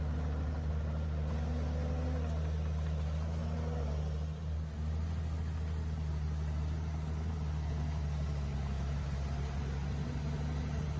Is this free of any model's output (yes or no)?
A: yes